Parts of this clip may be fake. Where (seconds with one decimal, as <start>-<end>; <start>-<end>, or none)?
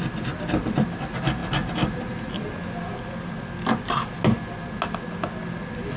none